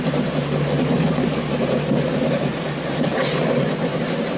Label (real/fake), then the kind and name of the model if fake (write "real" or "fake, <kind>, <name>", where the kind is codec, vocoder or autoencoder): real